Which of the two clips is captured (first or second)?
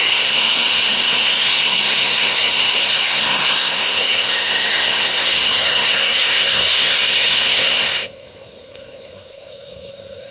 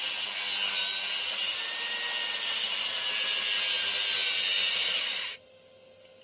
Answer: second